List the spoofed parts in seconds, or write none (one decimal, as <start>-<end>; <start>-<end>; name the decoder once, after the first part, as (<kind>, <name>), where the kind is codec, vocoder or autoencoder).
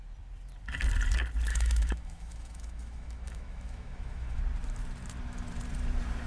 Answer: 1.5-4.4 (autoencoder, DAC-VAE)